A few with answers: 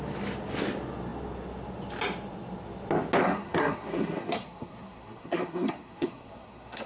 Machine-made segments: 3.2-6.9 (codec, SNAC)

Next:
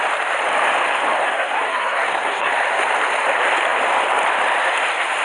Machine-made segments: 1.2-2.5 (codec, SNAC)

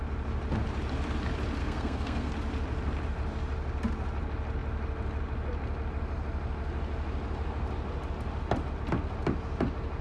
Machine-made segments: 1.6-2.3 (codec, SNAC)

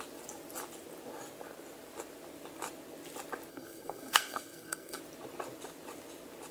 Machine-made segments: 3.5-5.0 (codec, SNAC)